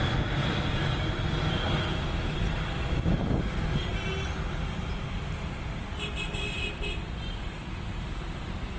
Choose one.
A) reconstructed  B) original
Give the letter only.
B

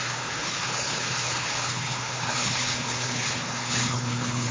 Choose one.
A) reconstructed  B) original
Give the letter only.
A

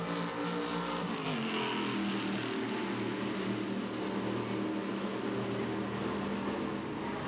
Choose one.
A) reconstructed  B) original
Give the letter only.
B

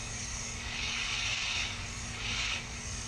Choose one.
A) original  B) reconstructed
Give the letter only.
B